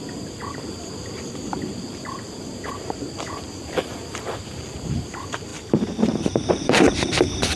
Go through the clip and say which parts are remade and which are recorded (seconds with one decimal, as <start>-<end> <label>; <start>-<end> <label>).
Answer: 0.0-7.6 remade